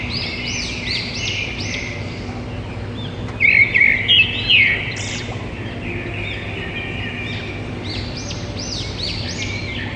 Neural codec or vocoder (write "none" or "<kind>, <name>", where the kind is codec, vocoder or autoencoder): none